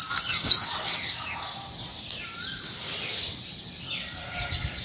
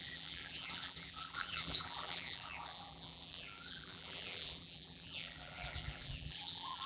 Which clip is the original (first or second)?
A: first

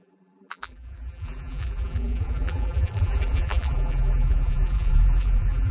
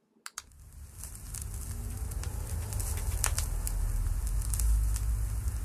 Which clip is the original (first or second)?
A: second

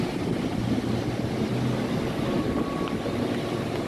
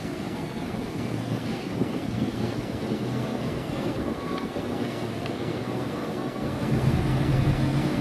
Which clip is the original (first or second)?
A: first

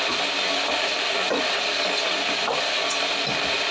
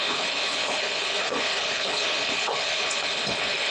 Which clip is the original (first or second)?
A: first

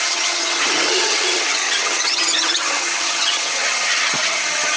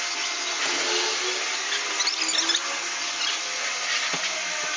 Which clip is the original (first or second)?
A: second